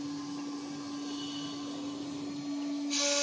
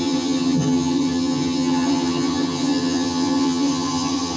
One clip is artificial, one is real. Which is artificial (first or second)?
second